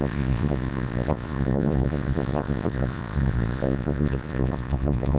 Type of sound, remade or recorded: remade